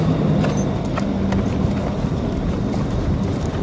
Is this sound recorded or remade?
recorded